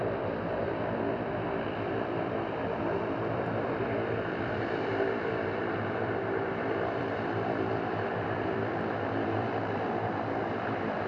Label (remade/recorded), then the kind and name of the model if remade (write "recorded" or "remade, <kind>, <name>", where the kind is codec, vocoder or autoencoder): remade, vocoder, BigVGAN v2